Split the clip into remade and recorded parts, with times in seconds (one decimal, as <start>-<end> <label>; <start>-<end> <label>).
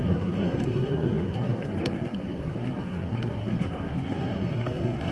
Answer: 0.0-5.1 remade